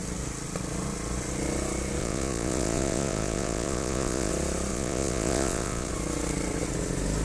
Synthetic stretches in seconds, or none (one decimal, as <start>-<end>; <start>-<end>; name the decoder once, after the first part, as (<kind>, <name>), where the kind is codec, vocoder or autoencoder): 2.0-4.3 (vocoder, Vocos); 4.7-5.9